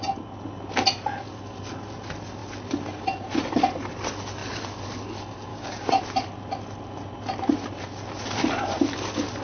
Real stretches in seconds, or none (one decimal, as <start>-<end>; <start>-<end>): 0.0-5.5; 6.0-9.4

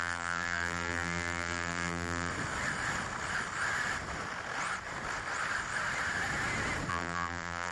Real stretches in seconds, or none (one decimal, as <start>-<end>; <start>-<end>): 2.3-6.9

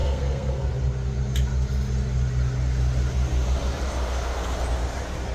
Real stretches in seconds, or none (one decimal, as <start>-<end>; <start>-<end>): 0.7-5.3

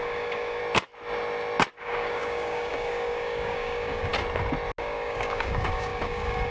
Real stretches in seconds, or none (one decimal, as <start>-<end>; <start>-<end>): 0.6-1.8; 4.1-4.8

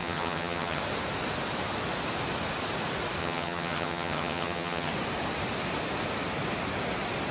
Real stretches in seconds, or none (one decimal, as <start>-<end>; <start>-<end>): 0.8-3.2; 4.9-7.3